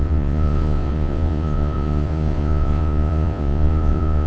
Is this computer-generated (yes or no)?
yes